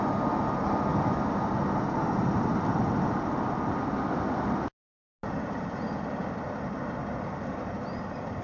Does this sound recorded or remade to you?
recorded